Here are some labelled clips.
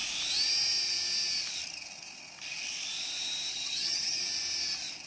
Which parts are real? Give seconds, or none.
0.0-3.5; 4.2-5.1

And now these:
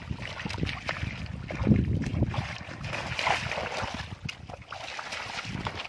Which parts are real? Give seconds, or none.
0.0-5.9

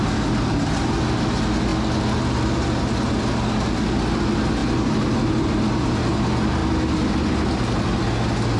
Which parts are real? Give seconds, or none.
0.0-8.6

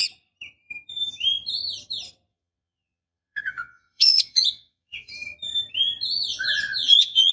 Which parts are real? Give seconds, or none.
0.0-2.3; 5.1-6.3